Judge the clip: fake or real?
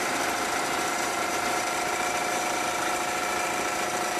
fake